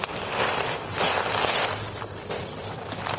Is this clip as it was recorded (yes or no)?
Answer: yes